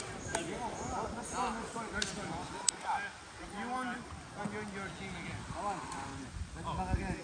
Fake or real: real